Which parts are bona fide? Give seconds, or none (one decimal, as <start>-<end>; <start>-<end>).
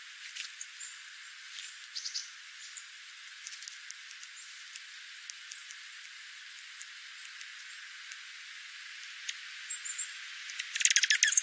0.0-11.4